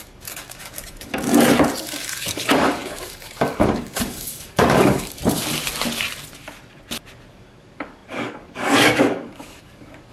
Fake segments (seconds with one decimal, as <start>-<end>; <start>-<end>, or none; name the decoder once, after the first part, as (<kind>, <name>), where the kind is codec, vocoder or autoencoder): 0.0-1.3 (codec, DAC); 1.8-5.2; 7.3-10.1

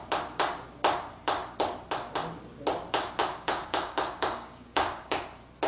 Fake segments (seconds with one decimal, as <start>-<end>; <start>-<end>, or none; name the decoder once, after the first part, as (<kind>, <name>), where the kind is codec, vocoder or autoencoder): 3.2-5.2 (codec, DAC)

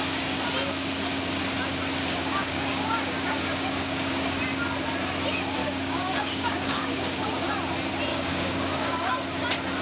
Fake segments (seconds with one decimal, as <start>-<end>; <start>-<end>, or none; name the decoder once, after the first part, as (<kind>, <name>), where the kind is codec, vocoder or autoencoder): 2.1-4.4 (codec, DAC); 5.6-7.5; 8.1-9.1

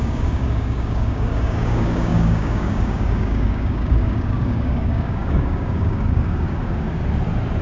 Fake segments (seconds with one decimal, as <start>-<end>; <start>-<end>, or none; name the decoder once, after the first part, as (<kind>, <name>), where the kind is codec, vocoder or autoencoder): 0.0-7.0 (codec, DAC)

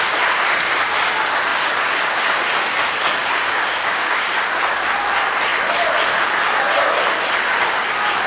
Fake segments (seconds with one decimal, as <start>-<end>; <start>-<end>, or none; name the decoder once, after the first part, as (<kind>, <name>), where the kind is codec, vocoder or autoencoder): 3.2-4.3 (codec, DAC)

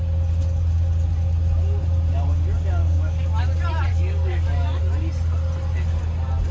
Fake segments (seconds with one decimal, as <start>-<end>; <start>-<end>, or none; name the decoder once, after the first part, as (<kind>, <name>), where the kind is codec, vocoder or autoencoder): 2.8-3.4 (codec, DAC); 3.9-4.8